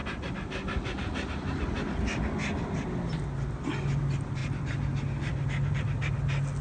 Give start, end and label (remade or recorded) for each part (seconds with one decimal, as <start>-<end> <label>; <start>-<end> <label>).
0.0-6.6 recorded